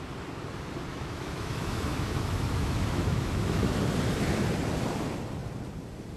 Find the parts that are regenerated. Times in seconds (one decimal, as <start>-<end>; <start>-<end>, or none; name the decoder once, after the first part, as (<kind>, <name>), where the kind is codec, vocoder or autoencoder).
0.9-3.8 (autoencoder, DAC-VAE)